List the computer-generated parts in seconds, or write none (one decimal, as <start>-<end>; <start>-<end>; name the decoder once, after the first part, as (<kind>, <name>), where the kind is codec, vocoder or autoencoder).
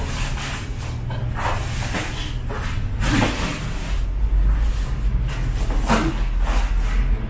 none